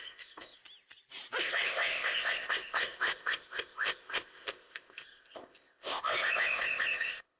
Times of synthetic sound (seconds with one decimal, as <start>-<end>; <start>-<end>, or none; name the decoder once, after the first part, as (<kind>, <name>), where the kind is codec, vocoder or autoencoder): 0.0-0.6 (codec, ZipCodec); 1.4-7.4